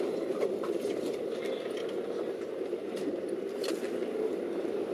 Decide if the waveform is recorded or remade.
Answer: recorded